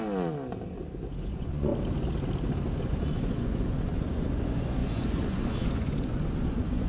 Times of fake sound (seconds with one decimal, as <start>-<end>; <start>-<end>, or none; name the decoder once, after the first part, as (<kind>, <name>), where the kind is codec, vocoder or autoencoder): 1.2-1.7 (vocoder, Vocos); 2.8-6.9